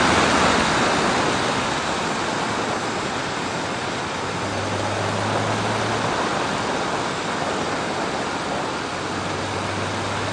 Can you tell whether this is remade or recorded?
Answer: recorded